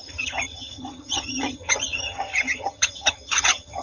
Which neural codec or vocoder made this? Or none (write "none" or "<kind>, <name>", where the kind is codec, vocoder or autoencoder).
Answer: vocoder, HiFi-GAN